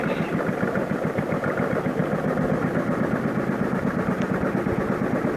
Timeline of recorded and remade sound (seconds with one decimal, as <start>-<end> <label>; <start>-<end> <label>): 0.0-5.4 recorded